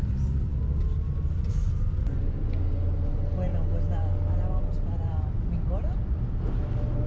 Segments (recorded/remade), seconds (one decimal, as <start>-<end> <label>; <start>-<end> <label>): 0.0-7.1 recorded